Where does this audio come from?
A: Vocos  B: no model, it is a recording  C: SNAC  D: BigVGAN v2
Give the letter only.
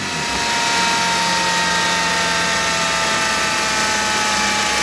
B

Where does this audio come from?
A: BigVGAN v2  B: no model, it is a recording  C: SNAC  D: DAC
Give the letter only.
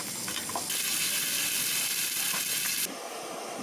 B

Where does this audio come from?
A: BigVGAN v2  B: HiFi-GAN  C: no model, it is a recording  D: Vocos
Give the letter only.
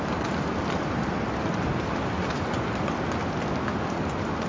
C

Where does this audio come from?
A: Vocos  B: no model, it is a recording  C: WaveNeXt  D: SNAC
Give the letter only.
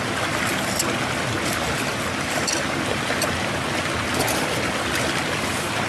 B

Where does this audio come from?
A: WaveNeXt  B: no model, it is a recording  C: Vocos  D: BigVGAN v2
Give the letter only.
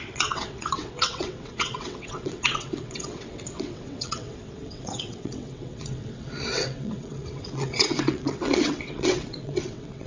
A